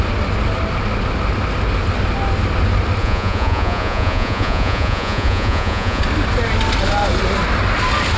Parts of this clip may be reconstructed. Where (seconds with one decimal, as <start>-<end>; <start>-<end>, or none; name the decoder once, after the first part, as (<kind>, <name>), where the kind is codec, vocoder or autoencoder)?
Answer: 3.0-6.0 (vocoder, Vocos)